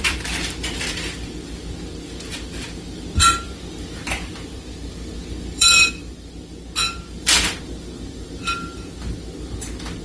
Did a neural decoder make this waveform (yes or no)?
yes